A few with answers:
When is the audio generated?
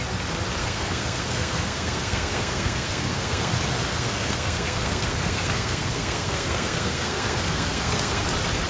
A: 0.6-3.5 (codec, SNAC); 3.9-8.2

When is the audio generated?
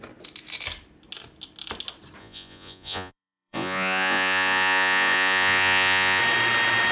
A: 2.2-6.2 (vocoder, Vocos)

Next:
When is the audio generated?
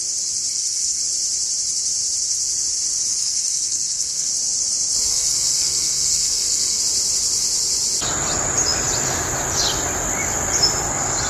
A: 0.5-1.0 (codec, SNAC); 3.1-4.3; 5.1-6.8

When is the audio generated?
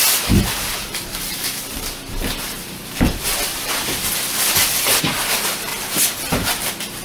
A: 1.1-5.0 (vocoder, BigVGAN v2); 5.7-6.5